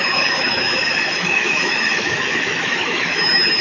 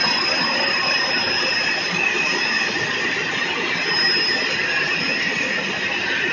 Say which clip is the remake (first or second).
first